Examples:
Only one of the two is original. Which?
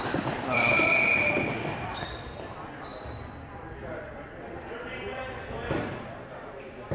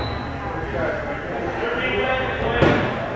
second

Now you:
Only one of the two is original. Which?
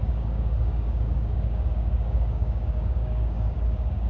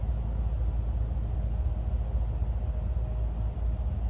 second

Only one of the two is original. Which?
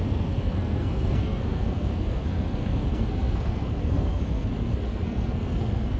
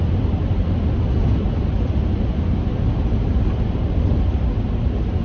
second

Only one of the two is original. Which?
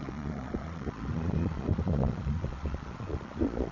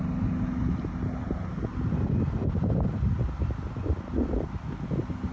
second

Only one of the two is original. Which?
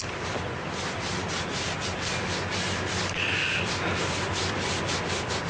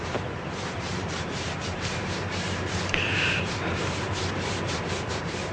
first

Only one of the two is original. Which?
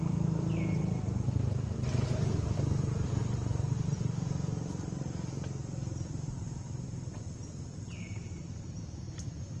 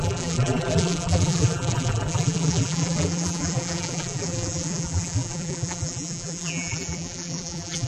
first